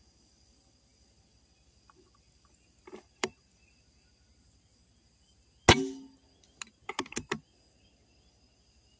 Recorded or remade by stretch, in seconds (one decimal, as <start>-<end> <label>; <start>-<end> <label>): 0.0-0.9 recorded; 0.9-4.1 remade; 4.1-9.0 recorded